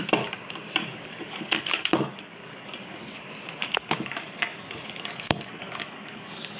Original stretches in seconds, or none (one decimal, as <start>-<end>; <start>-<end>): 0.0-0.8; 3.2-3.6